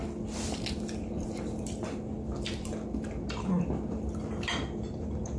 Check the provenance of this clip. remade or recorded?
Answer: recorded